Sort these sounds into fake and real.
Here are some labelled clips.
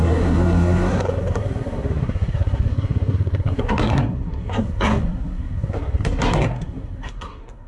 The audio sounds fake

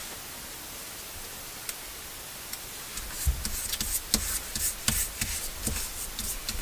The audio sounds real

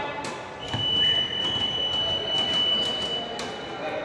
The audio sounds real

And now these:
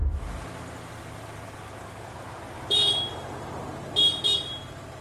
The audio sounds real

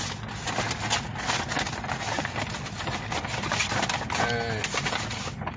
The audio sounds real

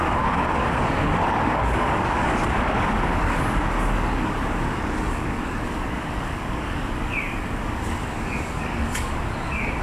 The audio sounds fake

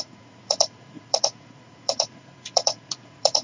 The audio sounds fake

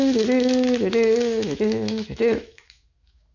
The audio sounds fake